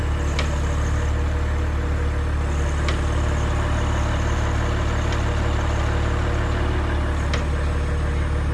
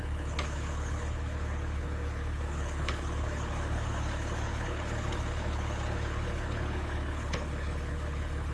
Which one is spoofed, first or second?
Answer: second